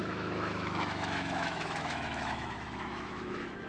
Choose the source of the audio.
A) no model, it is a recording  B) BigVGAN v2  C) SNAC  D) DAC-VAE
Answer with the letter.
D